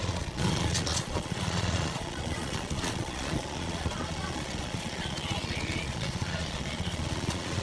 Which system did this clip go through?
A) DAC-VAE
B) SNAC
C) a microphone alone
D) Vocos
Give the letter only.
D